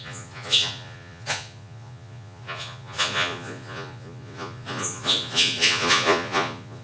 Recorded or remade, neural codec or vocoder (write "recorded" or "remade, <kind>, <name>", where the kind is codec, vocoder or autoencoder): remade, vocoder, Vocos